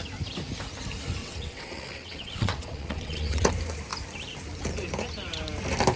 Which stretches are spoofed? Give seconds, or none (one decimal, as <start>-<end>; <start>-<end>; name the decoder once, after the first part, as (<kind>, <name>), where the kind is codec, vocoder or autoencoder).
1.2-3.5 (vocoder, WaveNeXt)

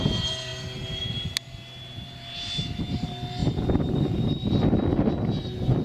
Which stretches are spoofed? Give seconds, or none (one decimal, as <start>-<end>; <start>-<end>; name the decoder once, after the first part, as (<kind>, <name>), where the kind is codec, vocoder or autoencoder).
none

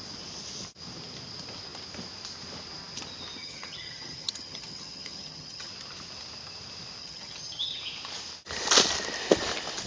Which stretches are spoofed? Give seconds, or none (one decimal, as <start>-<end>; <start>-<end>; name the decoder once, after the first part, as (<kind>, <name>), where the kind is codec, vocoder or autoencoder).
3.4-5.7 (vocoder, HiFi-GAN); 7.0-7.8

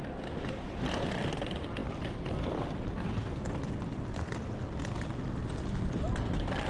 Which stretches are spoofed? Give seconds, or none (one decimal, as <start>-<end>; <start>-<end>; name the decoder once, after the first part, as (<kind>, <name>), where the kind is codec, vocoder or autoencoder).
none

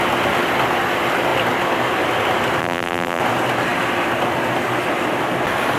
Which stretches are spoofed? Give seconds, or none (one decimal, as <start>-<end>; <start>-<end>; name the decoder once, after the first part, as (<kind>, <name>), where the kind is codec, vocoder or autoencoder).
2.6-3.2 (vocoder, BigVGAN v2)

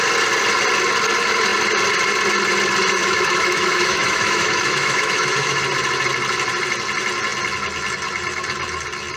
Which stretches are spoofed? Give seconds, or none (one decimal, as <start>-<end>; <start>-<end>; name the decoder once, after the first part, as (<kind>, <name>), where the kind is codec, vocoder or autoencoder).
3.0-5.6 (autoencoder, DAC-VAE)